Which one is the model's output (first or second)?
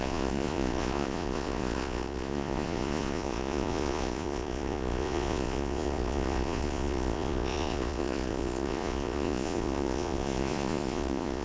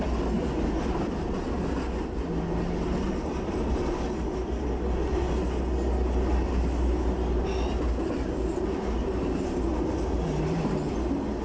first